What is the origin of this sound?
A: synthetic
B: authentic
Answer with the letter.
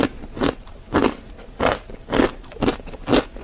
B